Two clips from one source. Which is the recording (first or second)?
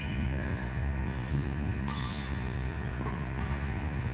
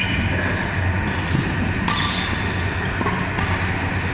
second